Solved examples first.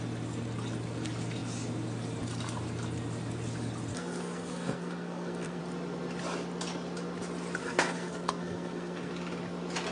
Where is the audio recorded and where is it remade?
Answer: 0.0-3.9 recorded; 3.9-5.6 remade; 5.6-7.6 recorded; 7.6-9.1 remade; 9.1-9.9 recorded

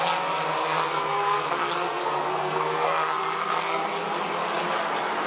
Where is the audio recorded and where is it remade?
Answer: 0.0-0.6 recorded; 0.6-3.8 remade; 3.8-5.3 recorded

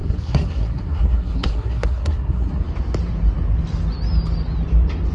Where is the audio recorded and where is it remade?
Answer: 0.0-2.6 remade; 2.6-5.1 recorded

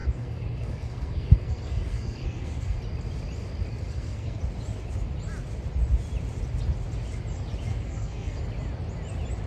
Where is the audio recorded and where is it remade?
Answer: 0.0-2.8 remade; 2.8-3.7 recorded; 3.7-4.4 remade; 4.4-7.7 recorded; 7.7-8.4 remade; 8.4-9.5 recorded

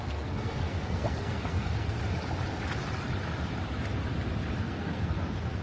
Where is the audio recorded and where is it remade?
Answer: 0.0-2.0 remade; 2.0-4.6 recorded; 4.6-5.6 remade